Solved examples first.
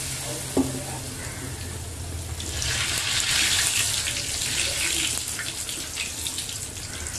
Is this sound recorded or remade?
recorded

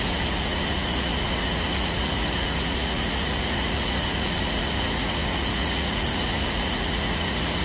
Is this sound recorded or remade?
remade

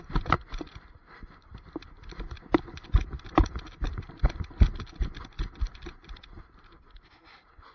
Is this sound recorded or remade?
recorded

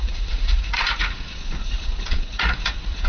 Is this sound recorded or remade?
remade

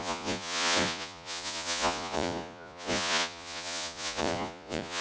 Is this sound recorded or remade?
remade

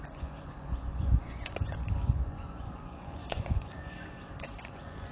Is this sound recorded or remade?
remade